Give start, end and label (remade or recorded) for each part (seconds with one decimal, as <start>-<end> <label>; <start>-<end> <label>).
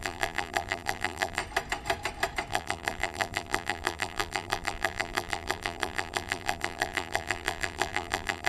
0.0-1.4 remade; 1.4-2.5 recorded; 2.5-8.5 remade